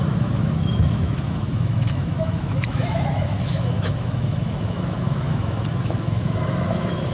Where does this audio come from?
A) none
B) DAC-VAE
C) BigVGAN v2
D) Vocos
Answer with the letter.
B